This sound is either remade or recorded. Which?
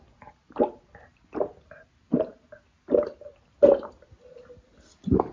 recorded